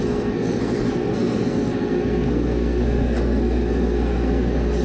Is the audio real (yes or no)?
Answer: no